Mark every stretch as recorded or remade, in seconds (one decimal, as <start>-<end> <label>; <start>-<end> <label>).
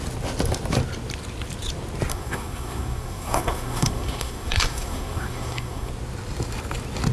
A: 0.0-2.1 recorded; 2.1-5.9 remade; 5.9-7.1 recorded